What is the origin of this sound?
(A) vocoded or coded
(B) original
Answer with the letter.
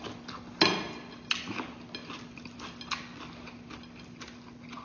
B